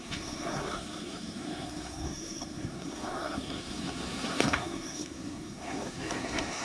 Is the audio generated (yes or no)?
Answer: yes